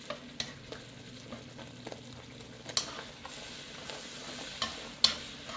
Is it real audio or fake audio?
real